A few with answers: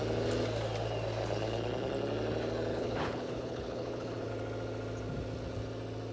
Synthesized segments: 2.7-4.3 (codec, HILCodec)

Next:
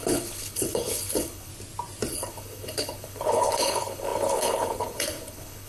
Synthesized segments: 0.0-1.5 (codec, HILCodec); 2.1-5.7